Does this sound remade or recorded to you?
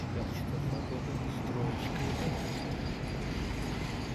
recorded